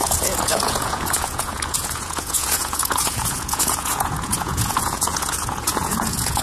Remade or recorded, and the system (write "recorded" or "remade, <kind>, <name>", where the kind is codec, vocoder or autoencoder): remade, vocoder, Vocos